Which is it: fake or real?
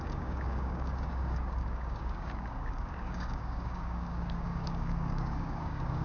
fake